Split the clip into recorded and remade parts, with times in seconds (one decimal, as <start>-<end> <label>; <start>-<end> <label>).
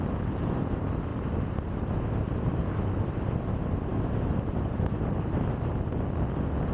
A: 0.0-6.7 recorded